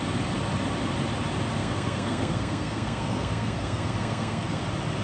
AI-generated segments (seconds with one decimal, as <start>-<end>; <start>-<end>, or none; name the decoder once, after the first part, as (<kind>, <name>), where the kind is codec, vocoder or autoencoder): 1.6-4.6 (codec, SNAC)